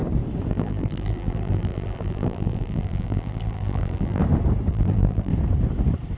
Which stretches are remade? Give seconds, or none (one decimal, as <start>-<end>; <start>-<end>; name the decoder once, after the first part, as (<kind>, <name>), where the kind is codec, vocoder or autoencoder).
0.5-4.2 (vocoder, BigVGAN v2); 4.7-5.3